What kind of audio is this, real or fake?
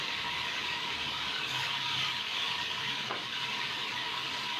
fake